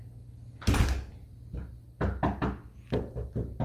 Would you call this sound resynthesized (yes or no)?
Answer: no